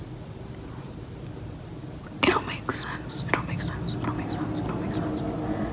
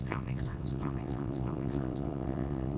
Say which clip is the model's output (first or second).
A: second